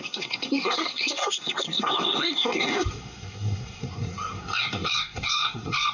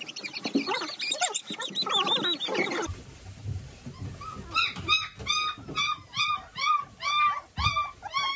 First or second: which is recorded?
second